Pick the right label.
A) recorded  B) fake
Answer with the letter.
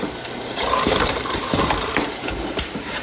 B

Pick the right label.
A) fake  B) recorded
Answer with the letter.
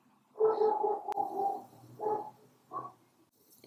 B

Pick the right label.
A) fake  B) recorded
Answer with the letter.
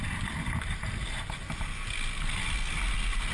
B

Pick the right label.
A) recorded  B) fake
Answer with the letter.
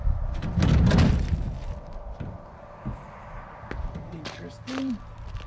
A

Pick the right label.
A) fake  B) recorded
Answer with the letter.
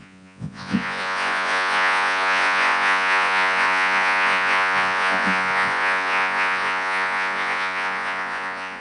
A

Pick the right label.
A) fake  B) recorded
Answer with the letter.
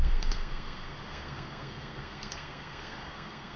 A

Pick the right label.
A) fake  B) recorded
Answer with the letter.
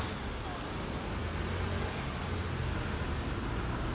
B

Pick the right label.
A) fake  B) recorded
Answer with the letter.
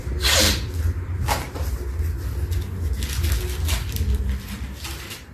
B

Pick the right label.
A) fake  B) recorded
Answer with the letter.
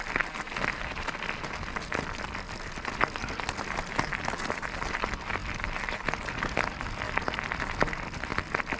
B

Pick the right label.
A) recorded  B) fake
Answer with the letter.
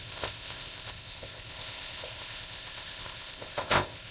B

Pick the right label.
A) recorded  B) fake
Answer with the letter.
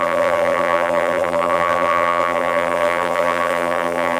B